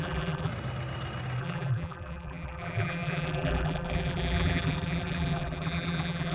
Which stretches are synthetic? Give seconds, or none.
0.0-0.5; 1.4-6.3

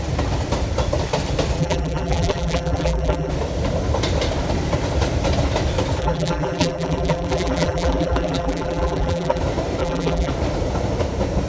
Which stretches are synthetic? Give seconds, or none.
1.6-3.3; 6.0-9.4; 9.8-10.3

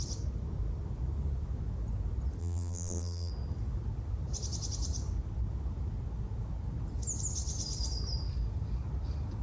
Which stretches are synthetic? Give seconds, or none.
2.4-3.3

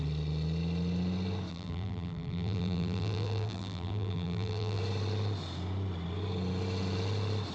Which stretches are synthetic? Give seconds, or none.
1.5-4.8

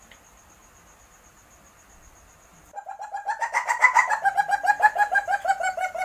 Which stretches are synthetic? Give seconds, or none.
2.5-4.4; 5.0-5.5

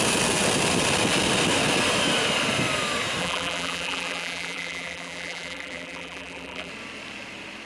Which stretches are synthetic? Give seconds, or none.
3.2-6.7

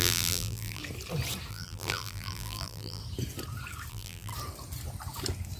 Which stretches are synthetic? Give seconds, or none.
0.0-0.8; 1.5-3.0; 3.9-4.3